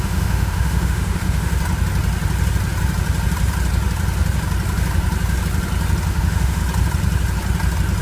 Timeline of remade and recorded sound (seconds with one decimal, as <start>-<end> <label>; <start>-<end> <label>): 0.0-1.5 remade; 1.5-6.1 recorded; 6.1-6.6 remade; 6.6-8.0 recorded